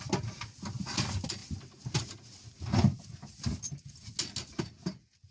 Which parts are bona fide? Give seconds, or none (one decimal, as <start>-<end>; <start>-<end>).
0.0-5.3